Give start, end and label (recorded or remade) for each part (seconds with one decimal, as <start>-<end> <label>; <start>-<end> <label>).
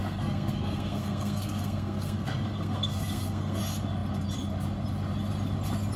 0.0-3.6 remade; 3.6-6.0 recorded